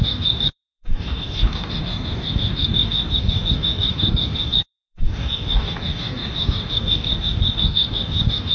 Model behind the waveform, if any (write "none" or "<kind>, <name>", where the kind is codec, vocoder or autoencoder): codec, DAC